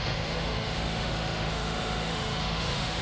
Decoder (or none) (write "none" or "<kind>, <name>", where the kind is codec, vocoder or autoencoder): autoencoder, DAC-VAE